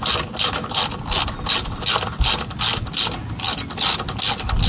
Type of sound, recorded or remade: recorded